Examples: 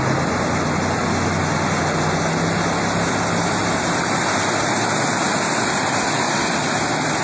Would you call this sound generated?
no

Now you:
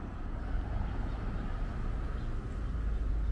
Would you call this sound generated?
no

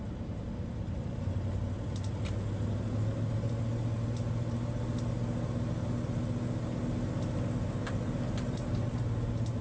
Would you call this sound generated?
no